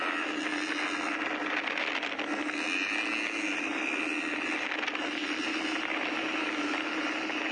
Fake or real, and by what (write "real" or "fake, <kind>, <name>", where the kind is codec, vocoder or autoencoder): real